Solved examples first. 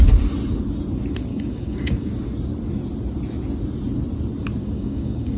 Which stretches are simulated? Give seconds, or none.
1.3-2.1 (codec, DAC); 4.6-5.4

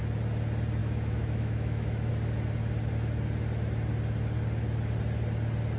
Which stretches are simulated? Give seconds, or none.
0.8-2.1 (autoencoder, DAC-VAE)

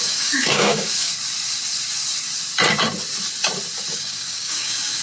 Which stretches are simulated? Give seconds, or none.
0.0-1.1 (codec, DAC); 3.9-5.0

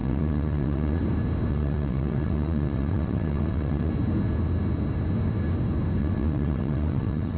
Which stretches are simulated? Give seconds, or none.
0.0-1.0 (vocoder, WaveNeXt); 1.5-3.9; 6.0-7.4

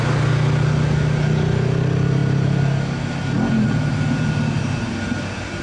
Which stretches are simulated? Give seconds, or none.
none